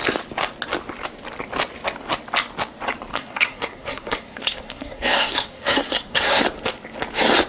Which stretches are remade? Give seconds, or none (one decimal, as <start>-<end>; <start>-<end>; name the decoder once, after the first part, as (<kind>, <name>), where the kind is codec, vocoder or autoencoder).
3.1-6.4 (codec, SNAC)